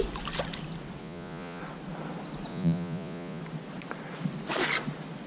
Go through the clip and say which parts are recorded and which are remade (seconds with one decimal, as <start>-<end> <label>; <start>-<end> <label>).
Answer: 0.0-1.0 recorded; 1.0-1.6 remade; 1.6-2.5 recorded; 2.5-3.4 remade; 3.4-5.3 recorded